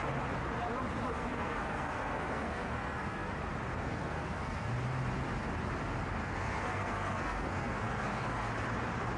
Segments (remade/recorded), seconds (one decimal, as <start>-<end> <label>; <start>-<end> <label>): 0.0-1.1 recorded; 1.1-3.3 remade; 3.3-3.7 recorded; 3.7-4.7 remade; 4.7-6.2 recorded; 6.2-8.5 remade; 8.5-9.2 recorded